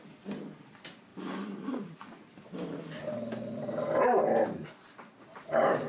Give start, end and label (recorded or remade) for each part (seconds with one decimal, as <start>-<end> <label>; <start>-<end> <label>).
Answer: 0.0-5.9 recorded